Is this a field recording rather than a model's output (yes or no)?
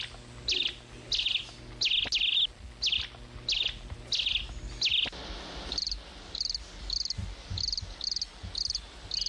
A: yes